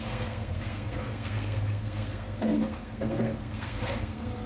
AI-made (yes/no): yes